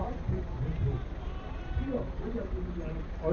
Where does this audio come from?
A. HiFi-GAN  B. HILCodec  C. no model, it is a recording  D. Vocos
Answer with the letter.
C